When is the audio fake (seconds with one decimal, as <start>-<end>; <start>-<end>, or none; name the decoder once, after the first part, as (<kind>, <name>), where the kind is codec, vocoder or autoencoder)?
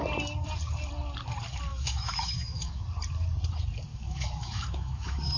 1.7-2.8 (autoencoder, DAC-VAE); 3.9-5.4